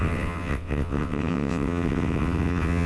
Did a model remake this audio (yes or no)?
yes